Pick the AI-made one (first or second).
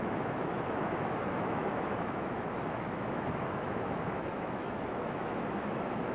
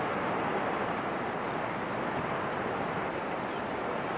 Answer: first